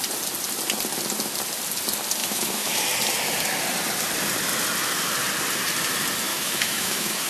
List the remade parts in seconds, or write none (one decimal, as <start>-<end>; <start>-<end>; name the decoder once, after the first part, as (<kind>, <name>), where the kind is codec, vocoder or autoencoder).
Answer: 2.2-2.8 (autoencoder, DAC-VAE); 6.3-7.3